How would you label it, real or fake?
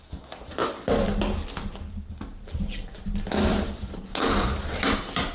real